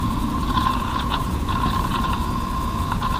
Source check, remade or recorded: remade